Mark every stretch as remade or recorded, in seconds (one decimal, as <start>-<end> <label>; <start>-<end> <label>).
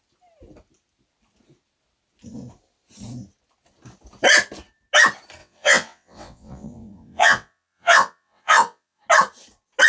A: 0.0-5.4 recorded; 5.4-9.0 remade; 9.0-9.9 recorded